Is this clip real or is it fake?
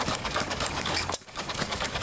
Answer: fake